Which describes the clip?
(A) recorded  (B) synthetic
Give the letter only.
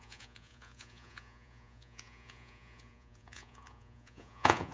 B